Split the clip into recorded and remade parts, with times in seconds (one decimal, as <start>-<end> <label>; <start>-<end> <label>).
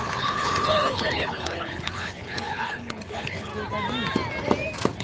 0.0-3.5 remade; 3.5-5.0 recorded